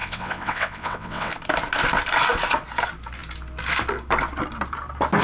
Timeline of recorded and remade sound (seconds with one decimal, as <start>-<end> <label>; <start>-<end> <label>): 0.0-1.3 remade; 1.3-5.2 recorded